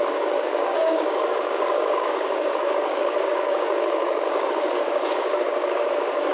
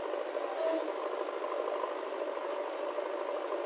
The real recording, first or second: second